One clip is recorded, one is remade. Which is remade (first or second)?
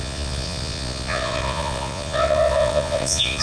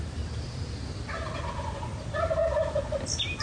first